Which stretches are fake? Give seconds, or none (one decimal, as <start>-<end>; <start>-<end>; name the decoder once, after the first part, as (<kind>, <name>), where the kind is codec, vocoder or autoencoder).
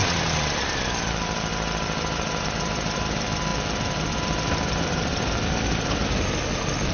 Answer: 0.0-1.5 (vocoder, BigVGAN v2); 2.4-6.9